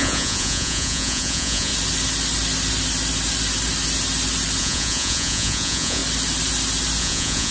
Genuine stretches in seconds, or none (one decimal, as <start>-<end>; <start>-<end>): 1.7-4.6; 6.0-7.0